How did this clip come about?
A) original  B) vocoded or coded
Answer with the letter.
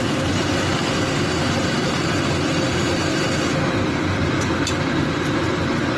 A